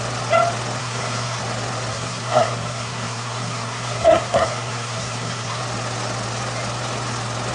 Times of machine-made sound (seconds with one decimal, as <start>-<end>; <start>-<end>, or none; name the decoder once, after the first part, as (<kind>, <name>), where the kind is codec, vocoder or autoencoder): 0.8-1.4 (codec, SNAC); 1.9-5.6